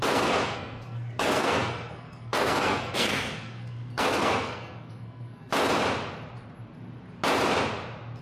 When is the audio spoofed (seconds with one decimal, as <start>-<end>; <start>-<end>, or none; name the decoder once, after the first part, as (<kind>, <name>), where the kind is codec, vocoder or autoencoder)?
0.0-5.5 (codec, SNAC)